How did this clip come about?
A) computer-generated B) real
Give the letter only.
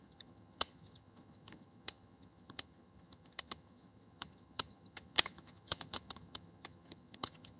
A